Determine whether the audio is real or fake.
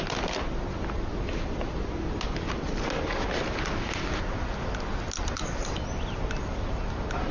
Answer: real